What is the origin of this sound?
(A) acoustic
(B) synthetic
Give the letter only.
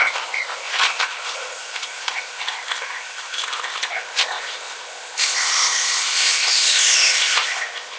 B